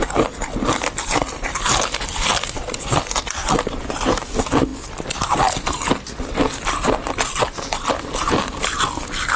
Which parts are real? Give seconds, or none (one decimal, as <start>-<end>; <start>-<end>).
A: 0.0-3.4; 4.2-9.4